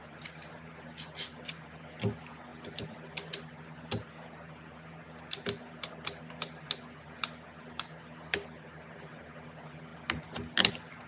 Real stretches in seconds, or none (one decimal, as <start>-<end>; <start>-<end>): 0.0-11.1